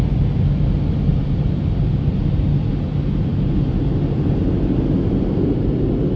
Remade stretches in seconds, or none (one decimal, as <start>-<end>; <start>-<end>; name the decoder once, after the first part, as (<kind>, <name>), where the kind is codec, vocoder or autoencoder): 1.1-2.7 (vocoder, BigVGAN v2)